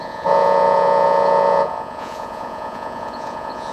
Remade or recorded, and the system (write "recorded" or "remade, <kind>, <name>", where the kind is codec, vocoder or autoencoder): remade, vocoder, Vocos